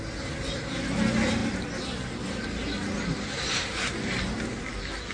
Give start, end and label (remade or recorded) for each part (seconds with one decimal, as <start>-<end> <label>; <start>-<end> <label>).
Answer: 0.0-5.1 recorded